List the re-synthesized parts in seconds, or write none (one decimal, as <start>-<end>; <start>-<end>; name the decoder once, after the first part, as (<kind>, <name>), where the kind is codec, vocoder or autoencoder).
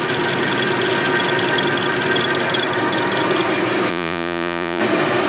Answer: 3.9-4.8 (vocoder, Vocos)